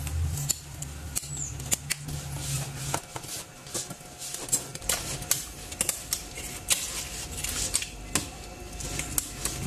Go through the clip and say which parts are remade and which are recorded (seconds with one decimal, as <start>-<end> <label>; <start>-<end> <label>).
0.0-9.7 recorded